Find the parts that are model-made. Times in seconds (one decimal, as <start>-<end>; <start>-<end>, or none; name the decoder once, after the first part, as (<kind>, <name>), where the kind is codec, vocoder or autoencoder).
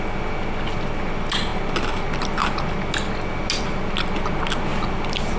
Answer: none